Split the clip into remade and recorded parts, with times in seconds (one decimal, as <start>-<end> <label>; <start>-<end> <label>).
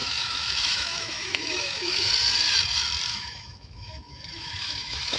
0.0-2.1 remade; 2.1-3.1 recorded; 3.1-5.2 remade